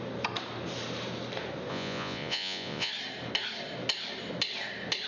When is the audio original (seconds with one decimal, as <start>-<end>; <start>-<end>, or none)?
0.0-1.7; 2.9-5.1